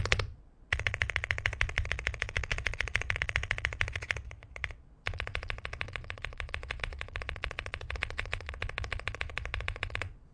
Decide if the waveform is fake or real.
fake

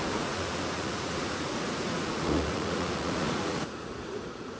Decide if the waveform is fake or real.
fake